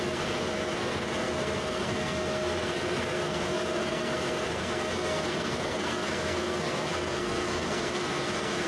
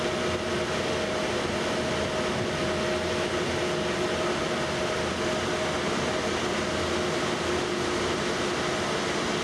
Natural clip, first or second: second